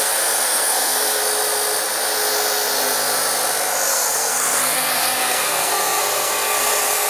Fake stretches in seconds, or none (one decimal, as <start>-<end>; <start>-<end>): 0.0-1.2; 3.9-7.1